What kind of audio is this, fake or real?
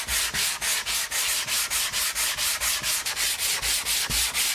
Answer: real